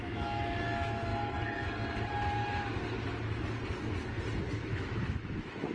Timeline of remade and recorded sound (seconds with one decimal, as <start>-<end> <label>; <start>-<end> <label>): 0.0-1.1 remade; 1.1-4.5 recorded; 4.5-5.7 remade